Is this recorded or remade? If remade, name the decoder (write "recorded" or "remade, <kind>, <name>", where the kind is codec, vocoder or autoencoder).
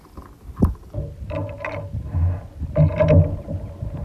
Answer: recorded